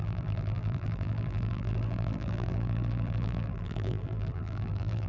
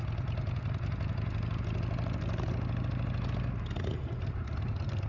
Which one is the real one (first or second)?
second